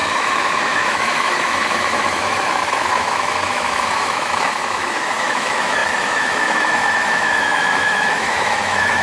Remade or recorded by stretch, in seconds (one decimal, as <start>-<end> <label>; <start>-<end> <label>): 0.0-9.0 remade